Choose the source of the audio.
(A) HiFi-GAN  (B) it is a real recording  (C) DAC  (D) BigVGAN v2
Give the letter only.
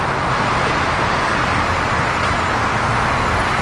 B